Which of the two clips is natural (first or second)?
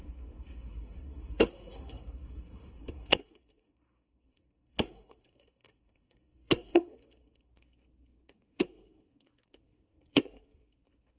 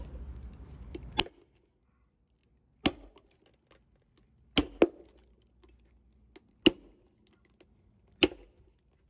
second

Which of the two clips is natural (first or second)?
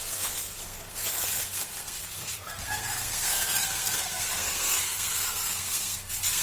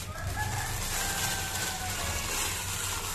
second